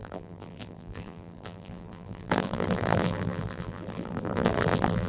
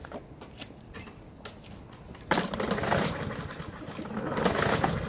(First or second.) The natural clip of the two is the second